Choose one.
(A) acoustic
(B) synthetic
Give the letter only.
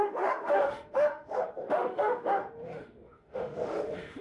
B